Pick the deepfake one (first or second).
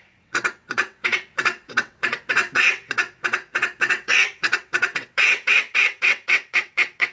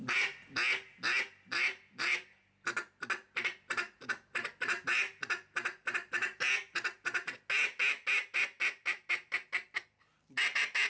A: first